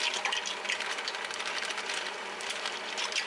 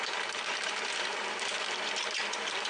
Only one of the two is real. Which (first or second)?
first